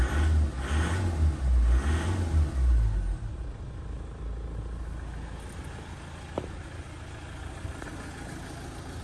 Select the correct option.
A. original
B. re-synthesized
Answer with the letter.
A